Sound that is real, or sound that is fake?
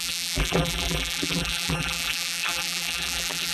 fake